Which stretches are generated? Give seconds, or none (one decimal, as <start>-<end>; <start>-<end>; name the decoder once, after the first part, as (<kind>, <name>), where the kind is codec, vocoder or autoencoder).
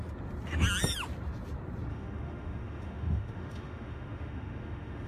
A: 1.9-5.1 (autoencoder, DAC-VAE)